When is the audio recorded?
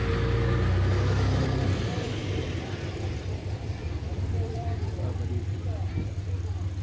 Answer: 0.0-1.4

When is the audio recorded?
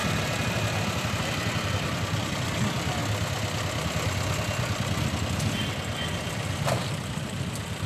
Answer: 0.0-1.2; 3.0-5.6